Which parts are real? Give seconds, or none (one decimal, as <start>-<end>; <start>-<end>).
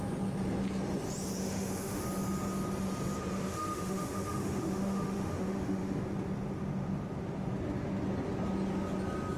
0.0-1.4; 2.0-3.3; 6.0-9.4